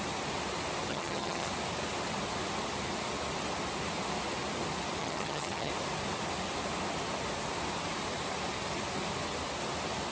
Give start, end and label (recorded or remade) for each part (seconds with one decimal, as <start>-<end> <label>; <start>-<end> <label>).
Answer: 0.0-0.9 recorded; 0.9-1.5 remade; 1.5-5.0 recorded; 5.0-5.7 remade; 5.7-10.1 recorded